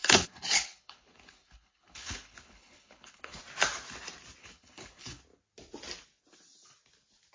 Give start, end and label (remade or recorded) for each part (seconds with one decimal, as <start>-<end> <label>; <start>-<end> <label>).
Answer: 0.0-3.4 remade; 3.4-4.4 recorded; 4.4-5.2 remade; 5.2-7.3 recorded